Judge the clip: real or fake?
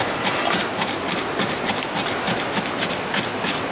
real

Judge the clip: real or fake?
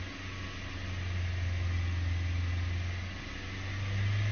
real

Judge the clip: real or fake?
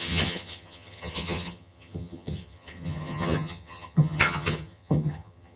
fake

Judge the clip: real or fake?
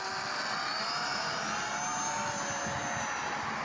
real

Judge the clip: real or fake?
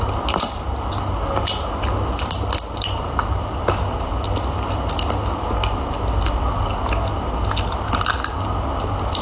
real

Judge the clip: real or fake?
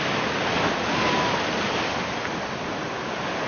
real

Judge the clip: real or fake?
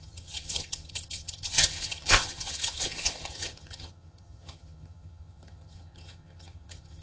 fake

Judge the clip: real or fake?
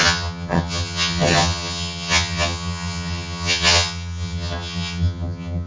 fake